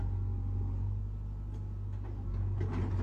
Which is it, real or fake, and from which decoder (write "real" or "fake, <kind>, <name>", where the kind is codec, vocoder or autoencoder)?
real